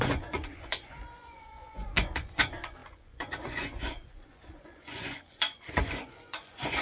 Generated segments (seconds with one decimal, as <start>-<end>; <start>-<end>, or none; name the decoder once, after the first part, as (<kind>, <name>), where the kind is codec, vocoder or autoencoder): 0.0-6.8 (vocoder, Vocos)